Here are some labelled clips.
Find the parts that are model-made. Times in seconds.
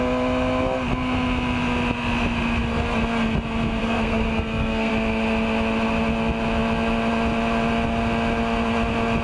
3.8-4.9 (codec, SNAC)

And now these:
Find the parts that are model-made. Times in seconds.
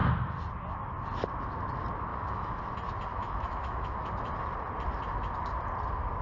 2.1-2.6 (autoencoder, DAC-VAE); 3.1-4.1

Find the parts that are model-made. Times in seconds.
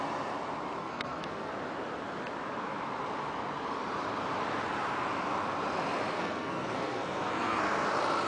0.8-1.5 (codec, SNAC); 6.1-7.9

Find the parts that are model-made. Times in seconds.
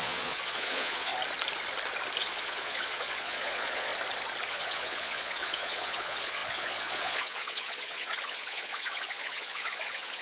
0.0-1.1 (vocoder, Vocos); 2.2-3.9; 4.5-10.2